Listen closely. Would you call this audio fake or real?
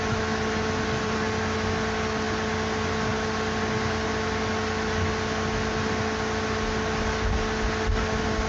real